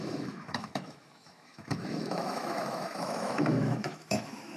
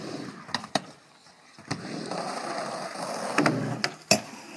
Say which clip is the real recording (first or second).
second